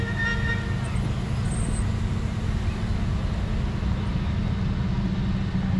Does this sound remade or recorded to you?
recorded